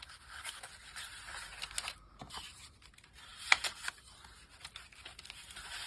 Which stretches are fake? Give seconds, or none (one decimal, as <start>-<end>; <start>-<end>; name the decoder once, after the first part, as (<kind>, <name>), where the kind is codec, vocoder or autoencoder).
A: none